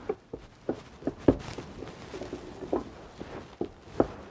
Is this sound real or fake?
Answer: real